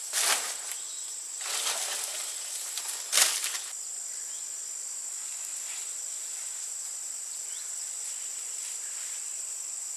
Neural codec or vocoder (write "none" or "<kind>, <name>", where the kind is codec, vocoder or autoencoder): none